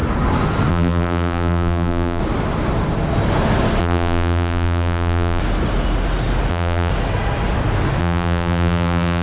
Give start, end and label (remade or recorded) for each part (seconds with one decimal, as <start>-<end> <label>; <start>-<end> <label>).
0.0-0.7 recorded; 0.7-2.2 remade; 2.2-3.8 recorded; 3.8-5.4 remade; 5.4-6.5 recorded; 6.5-6.9 remade; 6.9-8.0 recorded; 8.0-9.2 remade